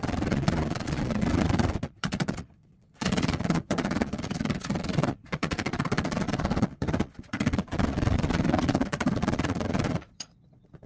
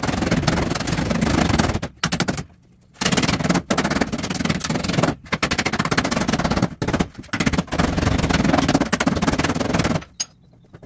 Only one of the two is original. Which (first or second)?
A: second